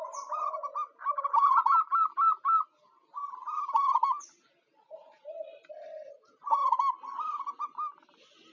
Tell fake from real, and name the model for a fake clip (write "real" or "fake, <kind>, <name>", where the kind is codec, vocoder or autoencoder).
real